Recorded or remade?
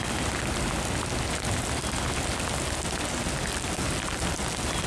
recorded